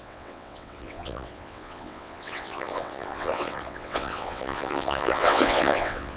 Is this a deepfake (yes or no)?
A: yes